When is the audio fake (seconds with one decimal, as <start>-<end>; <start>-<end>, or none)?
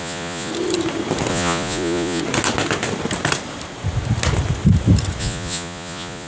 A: 0.0-0.5; 1.3-2.2; 5.2-6.3